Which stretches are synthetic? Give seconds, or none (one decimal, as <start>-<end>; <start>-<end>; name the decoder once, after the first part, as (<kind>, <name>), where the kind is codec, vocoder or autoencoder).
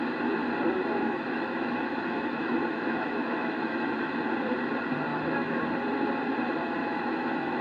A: 0.9-4.1 (autoencoder, DAC-VAE); 5.1-5.6; 6.8-7.6